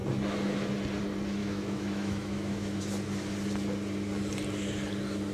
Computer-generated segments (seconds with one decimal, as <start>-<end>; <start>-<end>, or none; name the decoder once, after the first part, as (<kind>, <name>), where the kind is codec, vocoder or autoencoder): 1.4-2.8 (autoencoder, DAC-VAE)